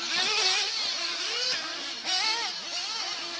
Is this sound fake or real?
real